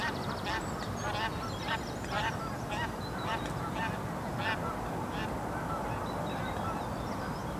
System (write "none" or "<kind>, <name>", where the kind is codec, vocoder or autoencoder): none